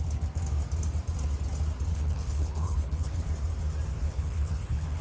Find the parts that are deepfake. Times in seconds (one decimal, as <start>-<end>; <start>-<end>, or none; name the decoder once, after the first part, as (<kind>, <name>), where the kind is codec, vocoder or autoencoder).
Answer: 1.9-3.3 (codec, HILCodec); 3.9-5.0